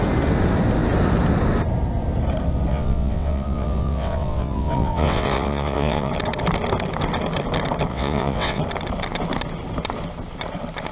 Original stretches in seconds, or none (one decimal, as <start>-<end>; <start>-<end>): 0.0-2.7; 6.1-7.9; 8.6-10.9